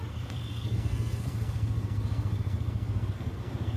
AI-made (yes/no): yes